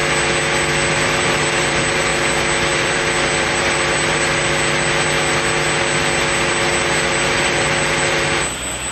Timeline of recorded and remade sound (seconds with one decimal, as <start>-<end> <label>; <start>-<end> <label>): 0.0-0.9 recorded; 0.9-2.1 remade; 2.1-2.7 recorded; 2.7-4.4 remade; 4.4-7.1 recorded; 7.1-8.9 remade